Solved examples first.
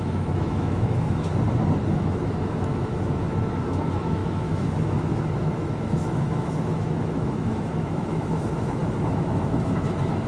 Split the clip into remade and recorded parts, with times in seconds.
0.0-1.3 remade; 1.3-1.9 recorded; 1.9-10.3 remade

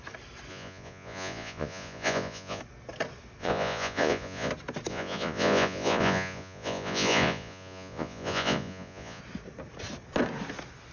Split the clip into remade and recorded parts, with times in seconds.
0.0-0.5 recorded; 0.5-2.6 remade; 2.6-3.4 recorded; 3.4-4.5 remade; 4.5-4.9 recorded; 4.9-9.2 remade; 9.2-10.9 recorded

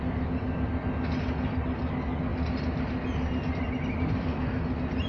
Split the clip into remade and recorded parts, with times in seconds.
0.0-5.1 recorded

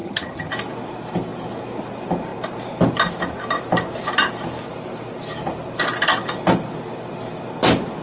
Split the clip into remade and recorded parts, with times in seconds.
0.0-0.5 remade; 0.5-8.0 recorded

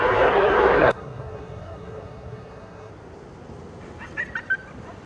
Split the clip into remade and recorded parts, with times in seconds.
0.0-2.9 remade; 2.9-5.1 recorded

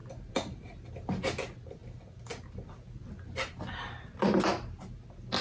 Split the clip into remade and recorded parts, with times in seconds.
0.0-5.4 recorded